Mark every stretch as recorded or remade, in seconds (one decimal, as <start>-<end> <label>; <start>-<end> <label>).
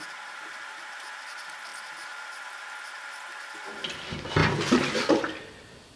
0.0-6.0 recorded